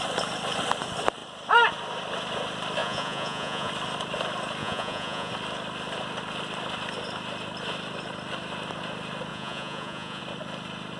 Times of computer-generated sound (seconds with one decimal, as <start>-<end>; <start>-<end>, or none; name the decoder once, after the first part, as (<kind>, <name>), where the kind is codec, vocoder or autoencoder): 2.8-3.7 (vocoder, Vocos); 4.6-5.3; 9.3-10.2